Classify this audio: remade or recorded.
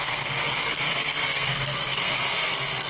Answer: remade